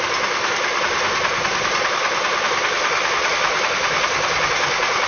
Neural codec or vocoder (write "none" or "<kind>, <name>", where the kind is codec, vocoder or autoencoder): none